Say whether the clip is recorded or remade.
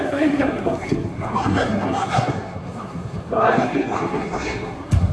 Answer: remade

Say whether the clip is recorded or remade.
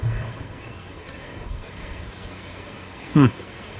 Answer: remade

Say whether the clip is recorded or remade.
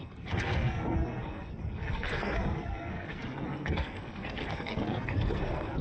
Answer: remade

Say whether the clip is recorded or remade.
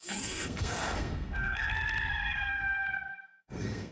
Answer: remade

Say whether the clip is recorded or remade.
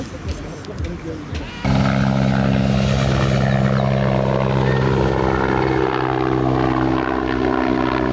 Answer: recorded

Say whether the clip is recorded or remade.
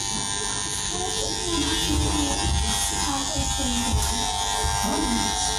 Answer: recorded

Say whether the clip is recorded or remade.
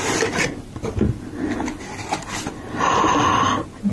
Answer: recorded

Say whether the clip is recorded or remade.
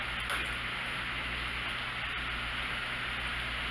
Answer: recorded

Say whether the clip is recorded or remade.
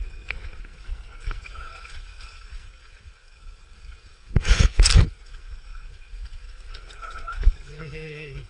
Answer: remade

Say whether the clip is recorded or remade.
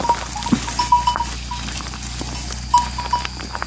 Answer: recorded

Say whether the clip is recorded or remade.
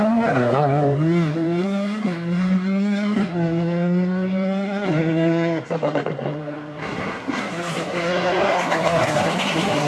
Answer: remade